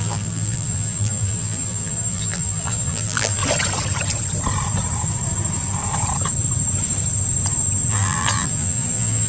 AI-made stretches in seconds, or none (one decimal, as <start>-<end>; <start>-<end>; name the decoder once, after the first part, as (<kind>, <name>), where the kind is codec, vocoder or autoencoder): 0.0-3.4 (vocoder, BigVGAN v2); 7.9-9.3